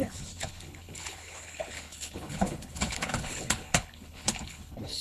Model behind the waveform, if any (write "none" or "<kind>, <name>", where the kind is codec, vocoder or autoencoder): codec, HILCodec